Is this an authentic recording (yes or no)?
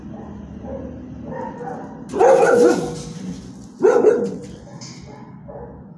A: yes